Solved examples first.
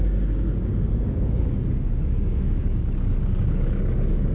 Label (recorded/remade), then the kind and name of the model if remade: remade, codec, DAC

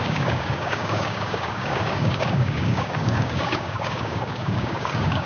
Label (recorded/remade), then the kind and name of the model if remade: remade, codec, DAC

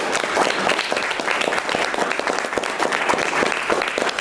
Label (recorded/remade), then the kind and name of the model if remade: recorded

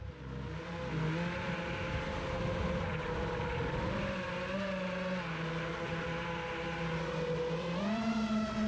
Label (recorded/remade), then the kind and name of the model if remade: recorded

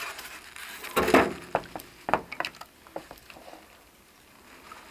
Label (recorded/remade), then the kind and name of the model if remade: recorded